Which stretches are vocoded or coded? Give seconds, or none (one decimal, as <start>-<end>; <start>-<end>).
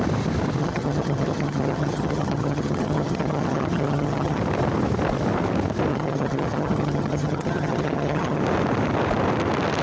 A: 0.6-4.4; 5.9-8.4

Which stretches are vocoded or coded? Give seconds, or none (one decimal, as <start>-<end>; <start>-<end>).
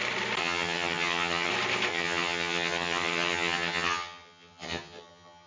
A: 0.4-1.5; 1.9-5.5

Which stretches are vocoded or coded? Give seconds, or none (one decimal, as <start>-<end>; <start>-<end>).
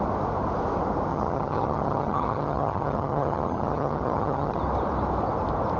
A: 1.1-4.6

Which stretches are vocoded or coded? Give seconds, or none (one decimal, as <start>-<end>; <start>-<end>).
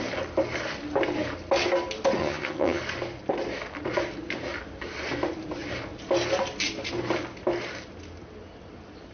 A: 2.2-2.8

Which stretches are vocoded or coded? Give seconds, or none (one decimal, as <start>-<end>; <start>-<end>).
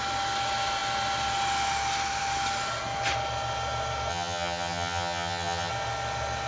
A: 4.1-5.7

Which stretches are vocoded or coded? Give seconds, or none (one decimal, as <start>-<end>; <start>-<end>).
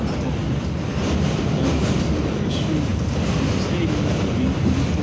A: none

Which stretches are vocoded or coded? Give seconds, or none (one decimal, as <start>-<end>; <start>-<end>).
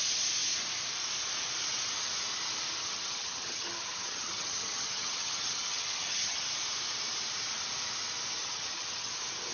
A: 2.8-6.4; 8.4-9.1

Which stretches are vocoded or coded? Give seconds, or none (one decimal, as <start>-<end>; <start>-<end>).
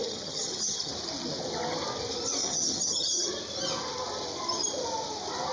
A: 0.0-0.9; 2.4-3.3